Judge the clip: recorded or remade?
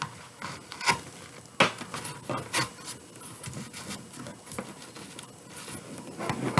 recorded